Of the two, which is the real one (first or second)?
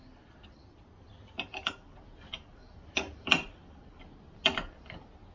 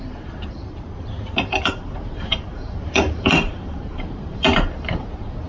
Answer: first